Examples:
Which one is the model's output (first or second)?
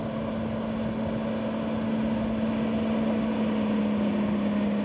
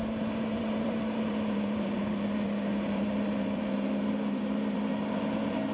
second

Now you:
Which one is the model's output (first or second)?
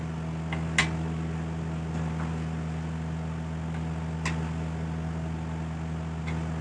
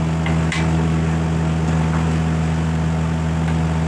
second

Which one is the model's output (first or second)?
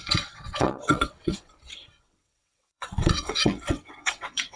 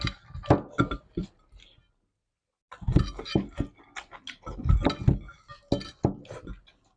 first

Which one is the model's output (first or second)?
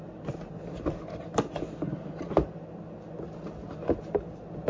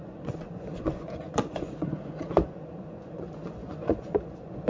second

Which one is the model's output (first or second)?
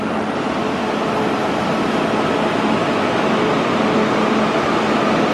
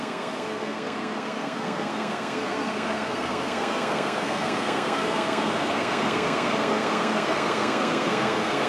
second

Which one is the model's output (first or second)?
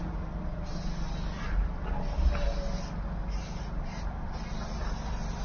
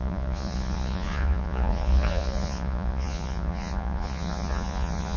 second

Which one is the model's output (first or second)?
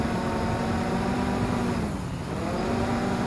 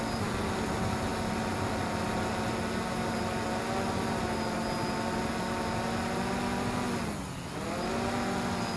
first